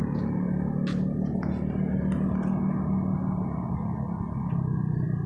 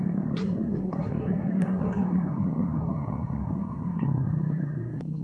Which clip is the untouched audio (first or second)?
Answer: first